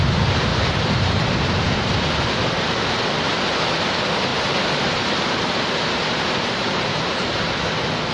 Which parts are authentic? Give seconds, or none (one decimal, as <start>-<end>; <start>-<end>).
0.0-0.5; 2.2-4.3; 7.6-8.1